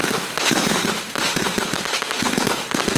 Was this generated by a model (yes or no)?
yes